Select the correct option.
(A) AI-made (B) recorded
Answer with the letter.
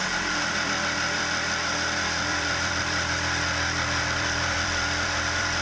A